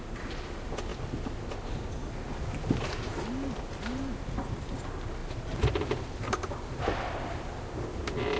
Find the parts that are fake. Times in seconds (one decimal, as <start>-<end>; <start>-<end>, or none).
none